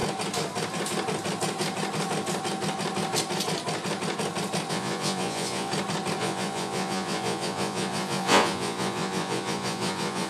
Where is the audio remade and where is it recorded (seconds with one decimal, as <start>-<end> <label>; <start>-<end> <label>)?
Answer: 0.0-4.7 recorded; 4.7-5.7 remade; 5.7-6.2 recorded; 6.2-10.3 remade